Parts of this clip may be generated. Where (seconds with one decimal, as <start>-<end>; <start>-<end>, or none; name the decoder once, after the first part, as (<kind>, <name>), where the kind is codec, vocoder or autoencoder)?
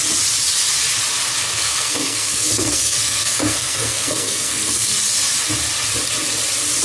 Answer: 1.4-5.0 (codec, SNAC)